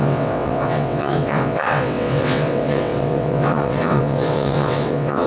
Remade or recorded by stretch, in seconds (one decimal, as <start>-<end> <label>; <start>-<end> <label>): 0.0-5.3 remade